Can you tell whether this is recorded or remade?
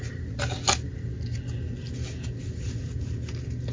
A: recorded